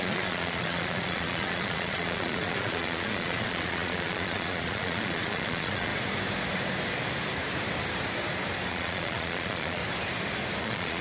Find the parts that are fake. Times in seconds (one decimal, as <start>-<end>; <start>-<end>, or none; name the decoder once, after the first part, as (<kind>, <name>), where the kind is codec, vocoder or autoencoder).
0.0-5.9 (vocoder, Vocos); 8.7-9.8; 10.6-11.0